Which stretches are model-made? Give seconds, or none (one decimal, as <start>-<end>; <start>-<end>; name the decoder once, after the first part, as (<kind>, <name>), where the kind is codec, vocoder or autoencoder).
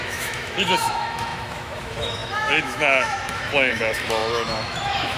0.0-5.2 (autoencoder, DAC-VAE)